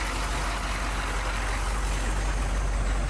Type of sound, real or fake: real